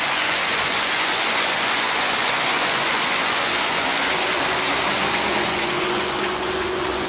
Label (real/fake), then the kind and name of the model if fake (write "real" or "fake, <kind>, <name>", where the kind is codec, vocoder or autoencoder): fake, vocoder, Vocos